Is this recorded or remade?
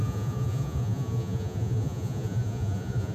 remade